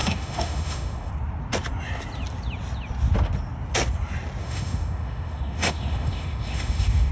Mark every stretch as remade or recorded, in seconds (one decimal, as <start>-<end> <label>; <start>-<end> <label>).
0.0-1.1 remade; 1.1-4.4 recorded; 4.4-7.1 remade